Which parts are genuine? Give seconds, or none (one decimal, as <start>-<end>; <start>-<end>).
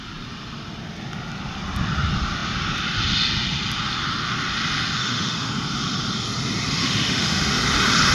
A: 0.0-5.0; 5.5-6.8; 7.5-8.1